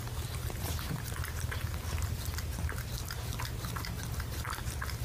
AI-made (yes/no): no